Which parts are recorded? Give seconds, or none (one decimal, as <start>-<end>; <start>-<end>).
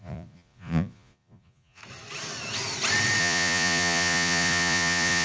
1.8-3.2